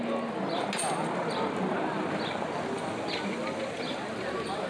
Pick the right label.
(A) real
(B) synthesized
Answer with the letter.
A